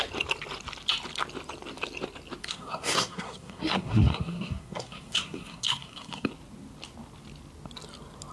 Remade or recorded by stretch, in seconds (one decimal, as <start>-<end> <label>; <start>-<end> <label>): 0.0-2.4 recorded; 2.4-6.3 remade; 6.3-8.3 recorded